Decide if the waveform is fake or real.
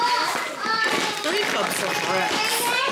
real